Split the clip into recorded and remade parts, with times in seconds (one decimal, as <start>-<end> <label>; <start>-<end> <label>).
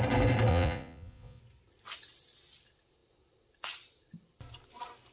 0.0-0.5 recorded; 0.5-1.4 remade; 1.4-5.1 recorded